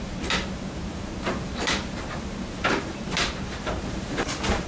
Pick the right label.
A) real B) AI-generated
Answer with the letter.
B